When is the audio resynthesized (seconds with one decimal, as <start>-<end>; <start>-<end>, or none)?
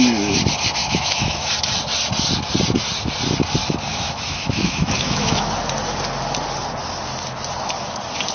0.8-1.5; 3.9-5.5